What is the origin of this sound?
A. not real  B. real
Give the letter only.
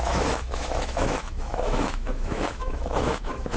A